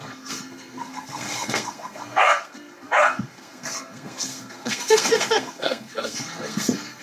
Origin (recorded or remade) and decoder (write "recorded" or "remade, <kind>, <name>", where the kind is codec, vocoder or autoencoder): remade, codec, SNAC